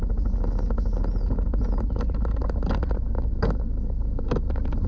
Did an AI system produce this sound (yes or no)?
no